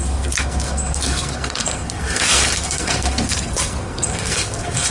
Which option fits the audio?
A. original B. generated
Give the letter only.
B